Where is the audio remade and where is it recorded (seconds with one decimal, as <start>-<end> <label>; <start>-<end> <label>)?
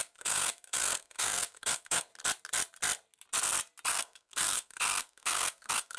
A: 0.0-2.1 remade; 2.1-3.9 recorded; 3.9-6.0 remade